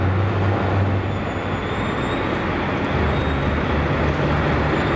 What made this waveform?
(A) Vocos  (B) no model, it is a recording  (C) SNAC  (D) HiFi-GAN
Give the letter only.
B